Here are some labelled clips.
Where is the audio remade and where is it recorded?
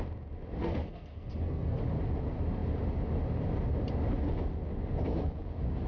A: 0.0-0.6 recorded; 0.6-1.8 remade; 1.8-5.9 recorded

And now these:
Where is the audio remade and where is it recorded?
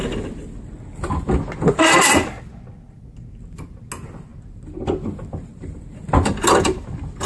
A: 0.0-7.3 recorded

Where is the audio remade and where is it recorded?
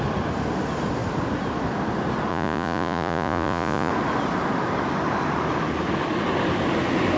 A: 0.0-2.3 recorded; 2.3-3.9 remade; 3.9-7.2 recorded